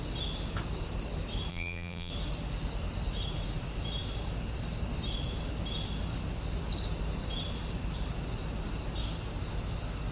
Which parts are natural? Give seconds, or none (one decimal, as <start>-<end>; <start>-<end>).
0.0-1.5; 2.1-10.1